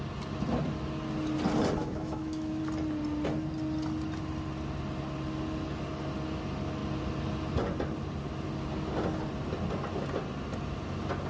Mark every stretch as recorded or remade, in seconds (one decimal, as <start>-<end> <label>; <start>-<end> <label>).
0.0-1.8 recorded; 1.8-2.6 remade; 2.6-11.3 recorded